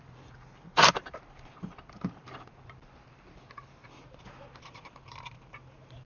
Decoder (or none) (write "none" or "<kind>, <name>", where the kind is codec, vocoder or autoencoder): vocoder, BigVGAN v2